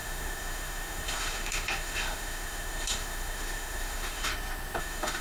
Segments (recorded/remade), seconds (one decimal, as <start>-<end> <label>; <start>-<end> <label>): 0.0-4.3 remade; 4.3-4.8 recorded; 4.8-5.2 remade